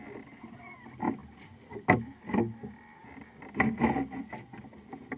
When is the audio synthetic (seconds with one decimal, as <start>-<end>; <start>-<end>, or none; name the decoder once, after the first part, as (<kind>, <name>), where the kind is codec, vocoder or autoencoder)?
none